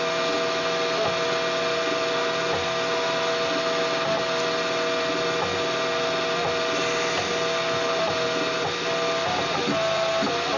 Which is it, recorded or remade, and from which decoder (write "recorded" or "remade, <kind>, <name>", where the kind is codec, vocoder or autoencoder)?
recorded